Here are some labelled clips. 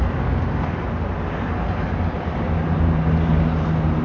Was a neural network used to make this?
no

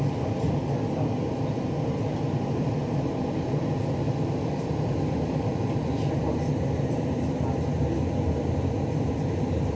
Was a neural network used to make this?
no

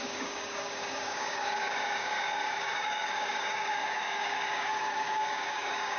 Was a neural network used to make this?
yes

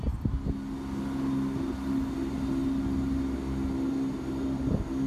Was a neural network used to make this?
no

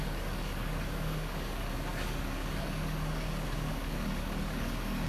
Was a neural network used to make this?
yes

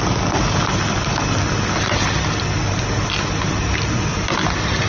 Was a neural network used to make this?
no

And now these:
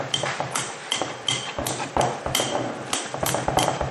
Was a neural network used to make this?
no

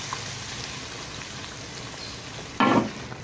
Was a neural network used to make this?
no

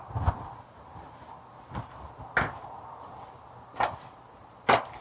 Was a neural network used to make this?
no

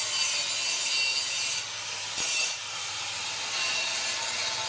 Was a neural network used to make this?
no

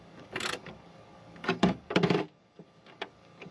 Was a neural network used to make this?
yes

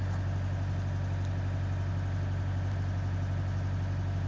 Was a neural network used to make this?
no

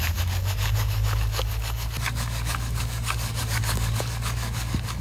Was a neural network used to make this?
yes